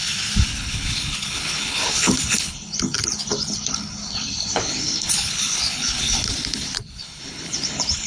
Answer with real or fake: fake